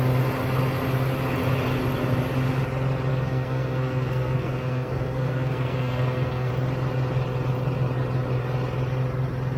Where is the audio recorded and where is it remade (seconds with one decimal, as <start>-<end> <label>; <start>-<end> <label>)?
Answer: 0.0-3.1 recorded; 3.1-6.5 remade; 6.5-9.6 recorded